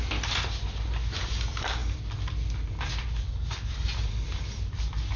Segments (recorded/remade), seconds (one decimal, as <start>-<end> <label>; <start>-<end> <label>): 0.0-5.2 recorded